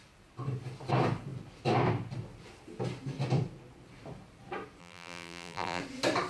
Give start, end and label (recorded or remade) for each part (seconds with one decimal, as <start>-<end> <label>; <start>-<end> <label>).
0.0-4.8 recorded; 4.8-5.8 remade; 5.8-6.3 recorded